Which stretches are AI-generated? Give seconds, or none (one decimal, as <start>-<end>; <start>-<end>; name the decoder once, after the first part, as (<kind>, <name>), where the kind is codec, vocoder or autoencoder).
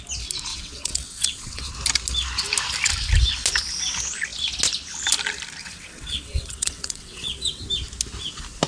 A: 0.5-1.7 (vocoder, WaveNeXt); 5.6-7.6